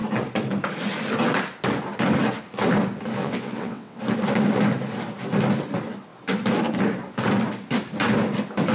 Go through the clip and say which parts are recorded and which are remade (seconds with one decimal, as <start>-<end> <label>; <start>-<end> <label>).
0.0-3.2 recorded; 3.2-4.0 remade; 4.0-8.7 recorded

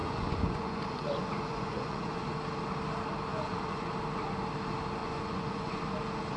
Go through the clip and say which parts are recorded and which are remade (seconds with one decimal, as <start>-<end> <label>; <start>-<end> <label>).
0.0-2.2 remade; 2.2-3.3 recorded; 3.3-3.9 remade; 3.9-5.0 recorded; 5.0-5.8 remade; 5.8-6.4 recorded

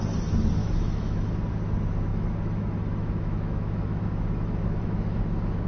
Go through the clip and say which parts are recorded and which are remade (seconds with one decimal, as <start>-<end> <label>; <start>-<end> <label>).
0.0-0.6 recorded; 0.6-1.3 remade; 1.3-2.1 recorded; 2.1-5.2 remade; 5.2-5.7 recorded

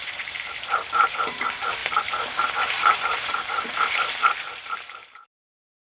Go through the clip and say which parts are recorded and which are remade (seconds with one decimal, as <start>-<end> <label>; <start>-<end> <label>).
0.0-5.9 remade

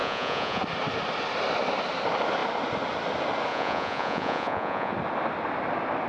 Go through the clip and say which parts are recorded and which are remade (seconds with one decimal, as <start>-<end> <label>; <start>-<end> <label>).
0.0-0.6 remade; 0.6-3.5 recorded; 3.5-4.9 remade; 4.9-6.1 recorded

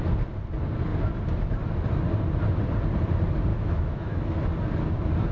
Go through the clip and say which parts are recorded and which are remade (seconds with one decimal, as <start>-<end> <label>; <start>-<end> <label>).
0.0-3.5 recorded; 3.5-4.4 remade; 4.4-5.3 recorded

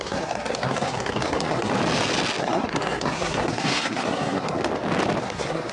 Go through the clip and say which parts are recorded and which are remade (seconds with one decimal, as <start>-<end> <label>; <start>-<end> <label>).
0.0-1.7 remade; 1.7-2.4 recorded; 2.4-4.6 remade; 4.6-5.2 recorded; 5.2-5.7 remade